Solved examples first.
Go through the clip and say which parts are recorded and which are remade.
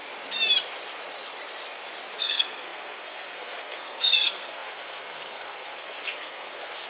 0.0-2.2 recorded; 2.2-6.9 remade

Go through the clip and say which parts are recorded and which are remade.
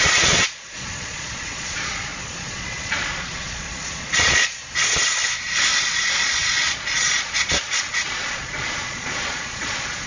0.0-4.6 remade; 4.6-5.8 recorded; 5.8-10.1 remade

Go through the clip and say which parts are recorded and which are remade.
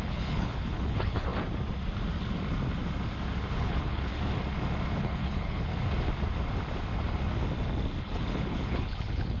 0.0-1.3 remade; 1.3-3.5 recorded; 3.5-4.1 remade; 4.1-5.0 recorded; 5.0-5.7 remade; 5.7-8.0 recorded; 8.0-9.4 remade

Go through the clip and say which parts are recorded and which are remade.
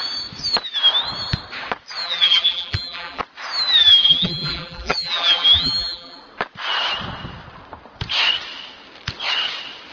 0.0-2.0 recorded; 2.0-3.2 remade; 3.2-3.8 recorded; 3.8-6.2 remade; 6.2-9.9 recorded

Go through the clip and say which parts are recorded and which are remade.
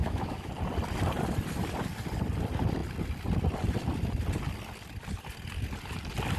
0.0-0.5 remade; 0.5-6.4 recorded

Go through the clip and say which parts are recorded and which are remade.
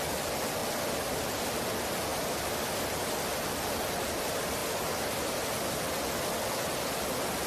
0.0-0.6 recorded; 0.6-1.3 remade; 1.3-2.1 recorded; 2.1-3.3 remade; 3.3-4.6 recorded; 4.6-5.8 remade; 5.8-7.5 recorded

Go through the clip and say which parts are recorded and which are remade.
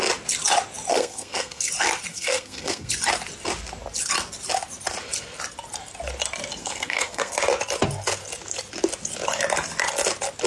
0.0-0.9 recorded; 0.9-1.7 remade; 1.7-2.1 recorded; 2.1-2.9 remade; 2.9-6.6 recorded; 6.6-7.3 remade; 7.3-10.5 recorded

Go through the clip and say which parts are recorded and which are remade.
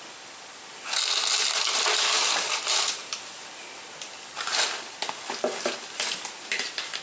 0.0-7.0 recorded